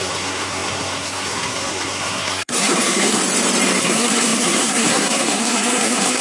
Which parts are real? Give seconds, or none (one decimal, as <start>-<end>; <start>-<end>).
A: 3.2-3.8